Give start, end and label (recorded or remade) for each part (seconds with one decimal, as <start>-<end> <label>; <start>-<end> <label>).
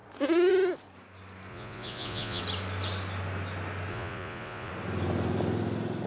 0.0-1.5 recorded; 1.5-2.4 remade; 2.4-3.9 recorded; 3.9-4.7 remade; 4.7-6.1 recorded